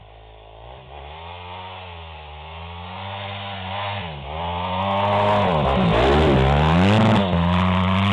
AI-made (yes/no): no